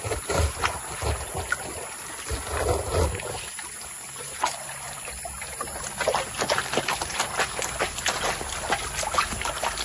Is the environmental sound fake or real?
real